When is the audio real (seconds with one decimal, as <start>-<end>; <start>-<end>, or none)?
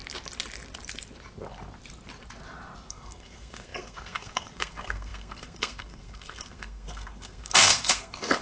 0.0-2.9